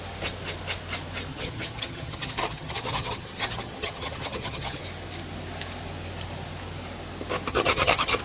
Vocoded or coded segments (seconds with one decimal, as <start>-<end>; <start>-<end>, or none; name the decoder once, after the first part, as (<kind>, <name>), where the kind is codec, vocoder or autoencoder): 1.3-4.8 (vocoder, HiFi-GAN); 7.5-8.2

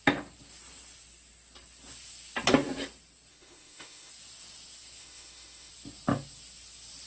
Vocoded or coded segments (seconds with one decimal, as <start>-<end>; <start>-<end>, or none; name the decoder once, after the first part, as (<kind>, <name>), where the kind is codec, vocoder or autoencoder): 3.3-4.1 (autoencoder, DAC-VAE); 5.0-5.7

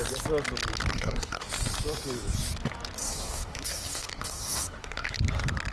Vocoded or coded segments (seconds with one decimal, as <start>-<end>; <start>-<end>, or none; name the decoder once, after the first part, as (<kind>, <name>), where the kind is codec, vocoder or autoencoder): 0.9-1.5 (codec, SNAC); 3.0-5.1

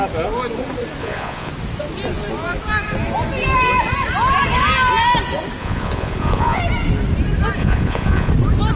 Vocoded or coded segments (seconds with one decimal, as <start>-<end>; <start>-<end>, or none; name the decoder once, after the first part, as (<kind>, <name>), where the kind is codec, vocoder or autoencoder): 1.0-1.5 (vocoder, Vocos); 5.6-6.6; 7.6-8.3

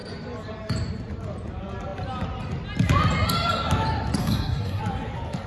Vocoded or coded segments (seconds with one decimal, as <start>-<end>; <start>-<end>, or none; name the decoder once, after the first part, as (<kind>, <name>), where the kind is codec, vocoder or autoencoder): 4.2-4.8 (codec, SNAC)

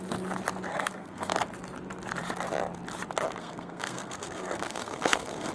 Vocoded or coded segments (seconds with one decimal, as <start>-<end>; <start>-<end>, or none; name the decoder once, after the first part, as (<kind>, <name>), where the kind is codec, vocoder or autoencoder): 0.7-1.3 (codec, SNAC); 3.4-5.5

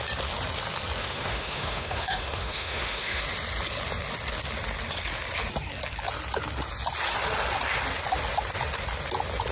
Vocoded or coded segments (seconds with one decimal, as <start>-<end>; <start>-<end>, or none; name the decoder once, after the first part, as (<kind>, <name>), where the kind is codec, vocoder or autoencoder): 1.0-3.2 (autoencoder, DAC-VAE)